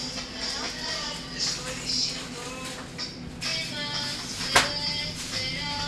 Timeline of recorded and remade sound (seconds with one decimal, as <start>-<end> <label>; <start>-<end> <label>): 0.0-5.9 recorded